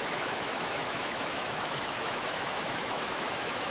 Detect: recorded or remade remade